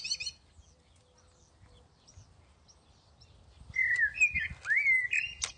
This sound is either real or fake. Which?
real